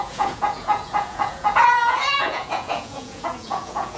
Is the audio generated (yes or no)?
yes